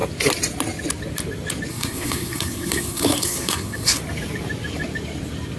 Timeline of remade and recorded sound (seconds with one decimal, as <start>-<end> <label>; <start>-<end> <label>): 0.0-1.7 recorded; 1.7-4.0 remade; 4.0-5.6 recorded